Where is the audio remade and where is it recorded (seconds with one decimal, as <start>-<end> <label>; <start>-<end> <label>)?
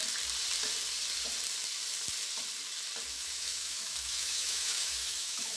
0.0-3.1 recorded; 3.1-5.6 remade